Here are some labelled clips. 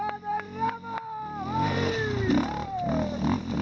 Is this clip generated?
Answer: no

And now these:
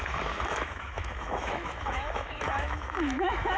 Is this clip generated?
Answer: yes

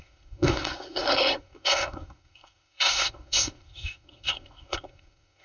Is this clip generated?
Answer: yes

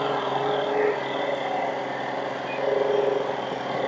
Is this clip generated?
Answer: no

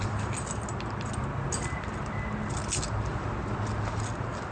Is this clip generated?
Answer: no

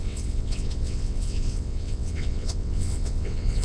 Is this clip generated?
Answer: yes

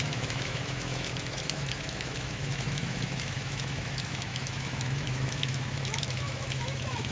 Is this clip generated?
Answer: yes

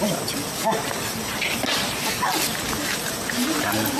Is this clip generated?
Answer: no